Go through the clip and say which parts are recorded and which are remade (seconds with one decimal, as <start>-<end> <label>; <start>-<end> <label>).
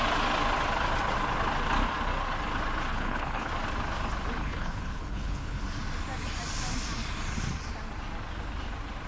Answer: 0.0-2.9 recorded; 2.9-3.5 remade; 3.5-4.4 recorded; 4.4-5.6 remade; 5.6-9.1 recorded